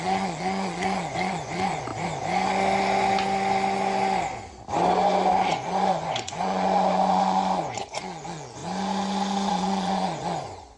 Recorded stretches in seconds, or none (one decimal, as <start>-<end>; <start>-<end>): 1.9-5.3; 8.6-9.5